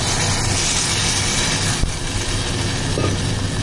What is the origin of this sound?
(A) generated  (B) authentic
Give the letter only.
B